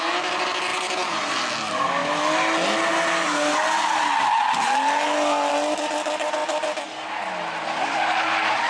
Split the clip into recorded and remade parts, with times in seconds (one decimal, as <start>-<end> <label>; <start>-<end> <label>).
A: 0.0-8.7 recorded